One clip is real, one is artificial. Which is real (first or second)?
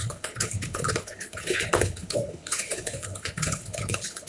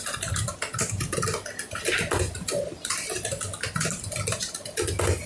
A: second